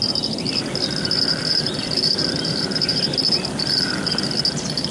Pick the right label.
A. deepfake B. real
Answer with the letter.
B